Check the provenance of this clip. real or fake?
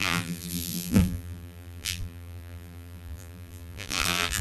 fake